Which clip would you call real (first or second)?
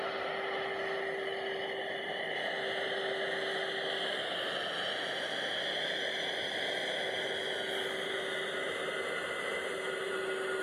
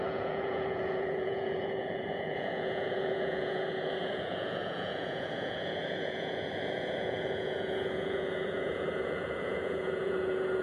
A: first